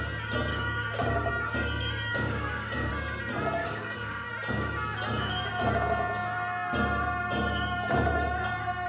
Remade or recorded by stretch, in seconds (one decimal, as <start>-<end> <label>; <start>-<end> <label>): 0.0-0.5 recorded; 0.5-1.3 remade; 1.3-2.1 recorded; 2.1-2.9 remade; 2.9-3.6 recorded; 3.6-4.3 remade; 4.3-8.9 recorded